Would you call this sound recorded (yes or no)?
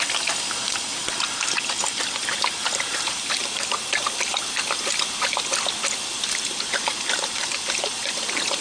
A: yes